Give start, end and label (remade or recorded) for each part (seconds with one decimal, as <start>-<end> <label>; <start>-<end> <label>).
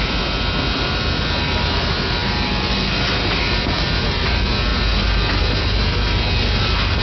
0.0-7.0 recorded